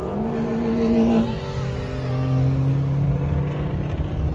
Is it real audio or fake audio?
real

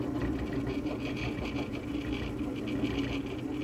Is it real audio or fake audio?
real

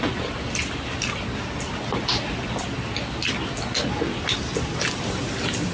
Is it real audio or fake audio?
real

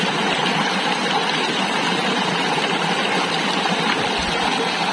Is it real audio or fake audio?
real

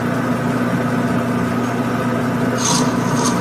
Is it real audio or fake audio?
real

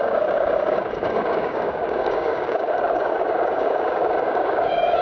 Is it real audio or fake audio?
fake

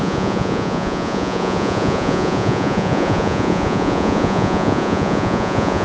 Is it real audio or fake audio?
fake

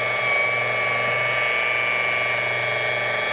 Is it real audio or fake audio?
real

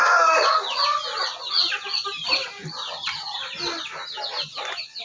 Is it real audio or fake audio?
real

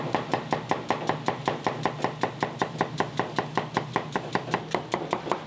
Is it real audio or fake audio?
real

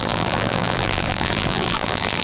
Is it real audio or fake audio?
fake